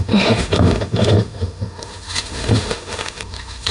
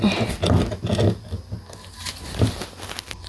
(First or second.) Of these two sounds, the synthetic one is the first